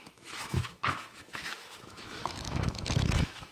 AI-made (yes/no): yes